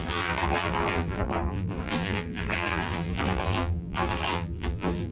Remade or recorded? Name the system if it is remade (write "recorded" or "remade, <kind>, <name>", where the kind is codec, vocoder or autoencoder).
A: remade, vocoder, BigVGAN v2